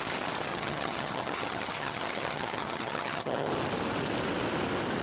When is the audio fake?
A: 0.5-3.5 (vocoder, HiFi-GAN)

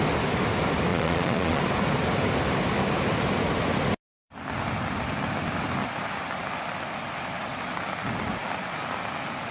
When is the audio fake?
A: 0.9-1.6 (vocoder, Vocos)

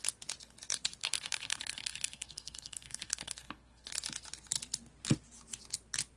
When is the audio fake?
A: 1.0-3.9 (codec, SNAC)

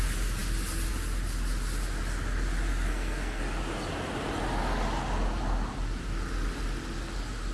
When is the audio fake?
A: 2.7-3.4 (codec, SNAC)